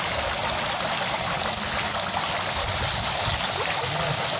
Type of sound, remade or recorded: recorded